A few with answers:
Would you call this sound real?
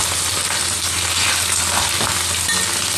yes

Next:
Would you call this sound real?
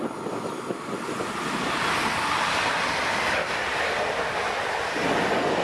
yes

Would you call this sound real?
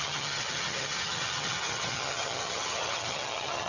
no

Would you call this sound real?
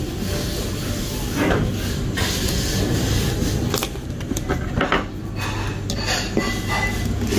yes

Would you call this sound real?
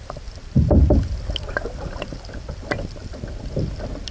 yes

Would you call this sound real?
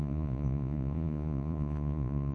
no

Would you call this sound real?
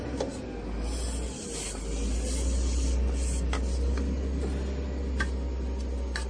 yes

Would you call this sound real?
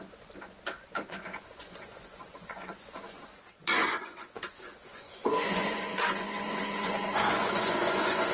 no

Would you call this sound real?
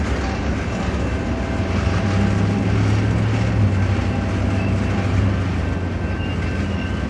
yes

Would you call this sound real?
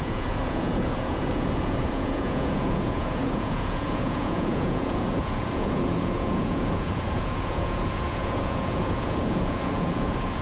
no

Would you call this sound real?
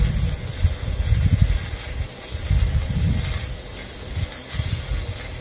yes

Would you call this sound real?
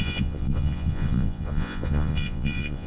no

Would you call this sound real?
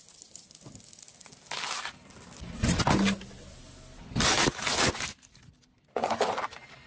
yes